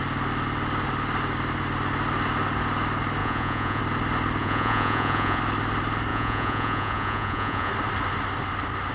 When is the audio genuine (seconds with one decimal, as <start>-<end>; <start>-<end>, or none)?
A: 0.0-3.2; 3.8-4.4; 5.4-6.1; 7.7-8.9

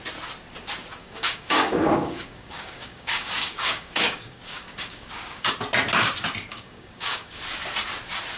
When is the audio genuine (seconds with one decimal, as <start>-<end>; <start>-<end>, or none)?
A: 0.0-1.0; 5.5-6.5; 7.4-8.4

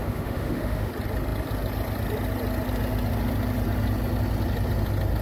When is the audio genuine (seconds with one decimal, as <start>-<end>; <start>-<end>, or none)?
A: 0.9-5.2

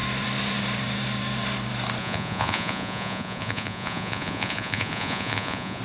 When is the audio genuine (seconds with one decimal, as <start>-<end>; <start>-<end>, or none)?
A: 0.0-2.0

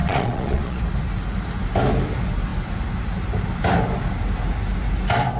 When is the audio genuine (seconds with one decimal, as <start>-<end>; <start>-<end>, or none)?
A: 0.8-5.4

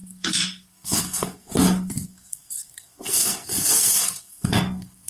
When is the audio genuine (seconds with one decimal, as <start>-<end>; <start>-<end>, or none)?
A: none

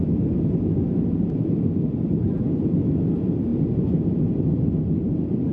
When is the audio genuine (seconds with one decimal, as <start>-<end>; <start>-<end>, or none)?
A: 0.0-5.5

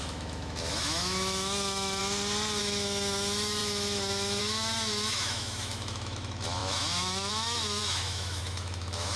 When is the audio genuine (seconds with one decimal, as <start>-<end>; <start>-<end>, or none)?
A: 2.0-2.6